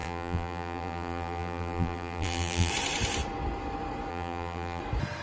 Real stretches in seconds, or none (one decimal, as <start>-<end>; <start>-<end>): 2.7-4.1; 4.8-5.2